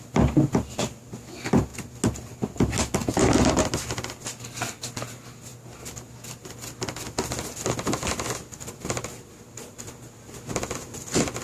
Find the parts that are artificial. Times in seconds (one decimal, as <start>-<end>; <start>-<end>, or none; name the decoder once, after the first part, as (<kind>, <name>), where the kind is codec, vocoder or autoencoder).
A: none